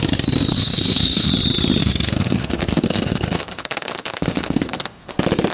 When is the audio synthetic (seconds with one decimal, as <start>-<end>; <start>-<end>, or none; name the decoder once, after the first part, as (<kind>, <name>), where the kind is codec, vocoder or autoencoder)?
0.5-1.3 (codec, SNAC); 1.8-5.1